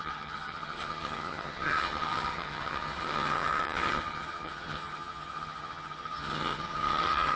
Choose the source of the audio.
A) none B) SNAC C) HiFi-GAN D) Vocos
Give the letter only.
C